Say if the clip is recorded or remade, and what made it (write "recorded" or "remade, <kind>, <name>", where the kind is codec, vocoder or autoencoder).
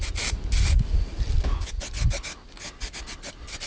recorded